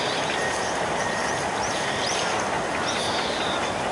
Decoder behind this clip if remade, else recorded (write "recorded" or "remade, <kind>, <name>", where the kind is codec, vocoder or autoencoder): remade, vocoder, BigVGAN v2